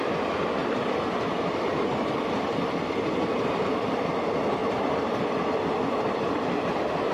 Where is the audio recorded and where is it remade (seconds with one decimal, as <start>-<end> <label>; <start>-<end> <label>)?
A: 0.0-0.6 recorded; 0.6-3.7 remade; 3.7-4.6 recorded; 4.6-6.3 remade; 6.3-7.1 recorded